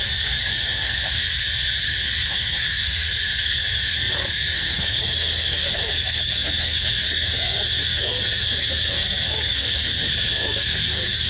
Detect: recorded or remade remade